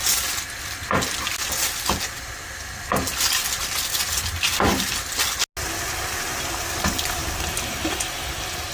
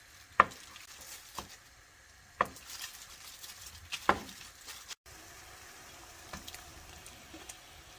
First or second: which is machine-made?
second